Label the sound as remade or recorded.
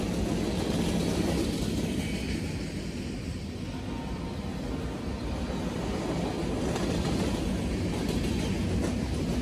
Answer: recorded